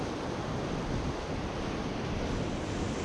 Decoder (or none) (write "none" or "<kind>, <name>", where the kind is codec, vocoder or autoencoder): none